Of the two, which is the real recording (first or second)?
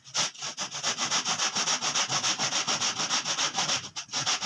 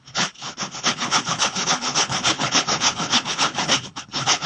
first